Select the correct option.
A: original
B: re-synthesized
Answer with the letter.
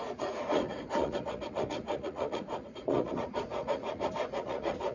B